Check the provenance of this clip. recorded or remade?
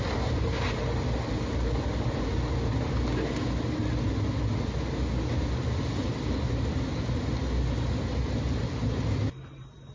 recorded